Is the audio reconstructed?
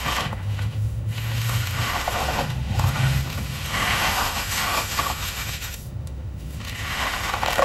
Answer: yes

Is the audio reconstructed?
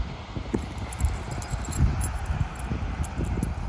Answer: no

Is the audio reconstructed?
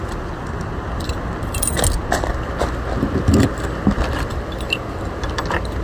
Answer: no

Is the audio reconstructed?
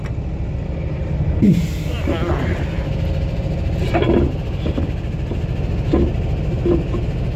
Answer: no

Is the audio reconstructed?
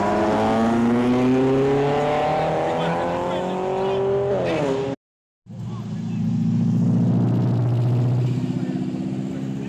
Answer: no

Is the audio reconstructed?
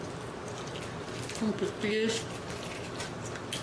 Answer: no